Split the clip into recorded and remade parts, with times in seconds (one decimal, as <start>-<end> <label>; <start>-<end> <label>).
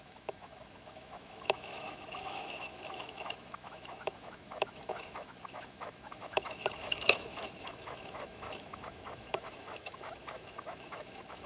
0.0-11.5 remade